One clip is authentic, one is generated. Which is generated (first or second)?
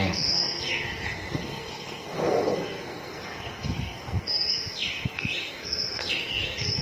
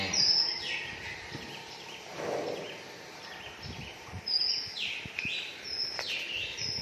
first